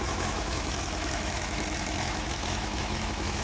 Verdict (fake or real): fake